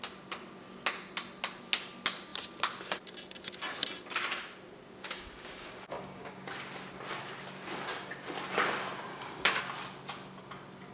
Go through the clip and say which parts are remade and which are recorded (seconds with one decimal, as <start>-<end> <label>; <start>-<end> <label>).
0.0-5.0 recorded; 5.0-6.5 remade; 6.5-9.1 recorded; 9.1-9.6 remade; 9.6-10.9 recorded